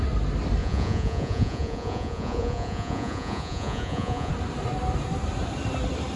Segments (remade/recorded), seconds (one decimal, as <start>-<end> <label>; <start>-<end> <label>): 0.0-0.6 recorded; 0.6-4.3 remade; 4.3-6.2 recorded